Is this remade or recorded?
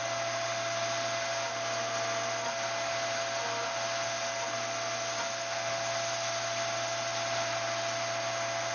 recorded